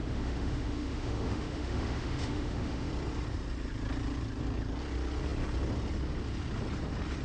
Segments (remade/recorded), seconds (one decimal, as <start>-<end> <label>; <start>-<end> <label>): 0.0-2.9 remade; 2.9-7.2 recorded